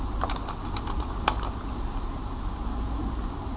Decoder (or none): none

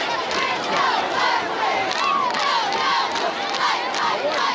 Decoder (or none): none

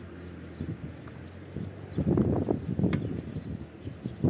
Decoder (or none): none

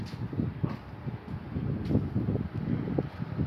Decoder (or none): none